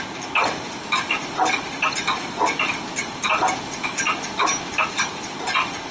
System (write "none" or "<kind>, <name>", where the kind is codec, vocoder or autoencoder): none